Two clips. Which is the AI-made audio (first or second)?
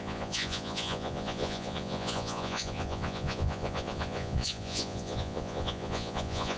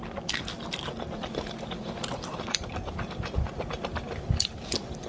first